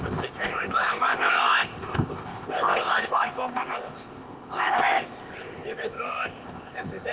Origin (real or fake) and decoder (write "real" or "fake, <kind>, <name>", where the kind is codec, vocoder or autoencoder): fake, codec, ZipCodec